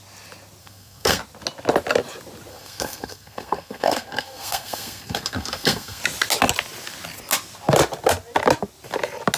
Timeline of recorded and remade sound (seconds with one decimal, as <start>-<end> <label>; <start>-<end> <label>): 0.0-0.6 recorded; 0.6-1.2 remade; 1.2-2.5 recorded; 2.5-6.0 remade; 6.0-9.4 recorded